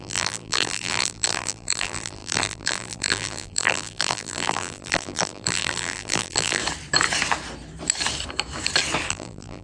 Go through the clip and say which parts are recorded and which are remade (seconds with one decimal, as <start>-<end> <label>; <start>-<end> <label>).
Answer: 0.0-6.6 remade; 6.6-9.1 recorded; 9.1-9.6 remade